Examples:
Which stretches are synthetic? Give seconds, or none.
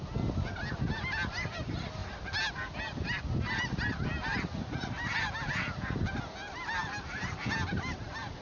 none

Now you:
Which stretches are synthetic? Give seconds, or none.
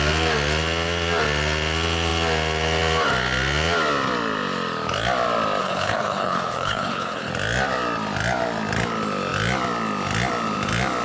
5.6-7.3 (codec, HILCodec)